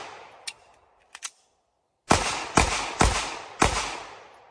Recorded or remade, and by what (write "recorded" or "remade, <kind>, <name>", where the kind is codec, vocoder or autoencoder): recorded